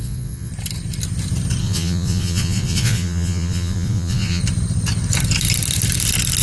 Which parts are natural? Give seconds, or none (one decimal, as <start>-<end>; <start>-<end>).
0.5-1.6; 4.4-6.4